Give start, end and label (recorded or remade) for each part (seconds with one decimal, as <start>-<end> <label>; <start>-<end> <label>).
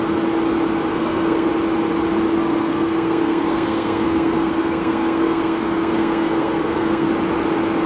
0.0-0.9 recorded; 0.9-1.5 remade; 1.5-2.4 recorded; 2.4-7.1 remade; 7.1-7.9 recorded